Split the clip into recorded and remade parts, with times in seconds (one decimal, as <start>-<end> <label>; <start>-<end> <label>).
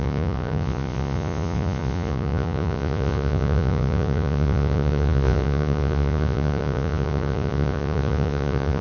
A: 0.0-8.8 remade